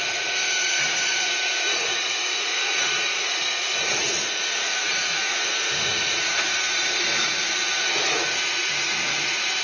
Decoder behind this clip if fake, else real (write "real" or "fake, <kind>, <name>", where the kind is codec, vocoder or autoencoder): fake, vocoder, Vocos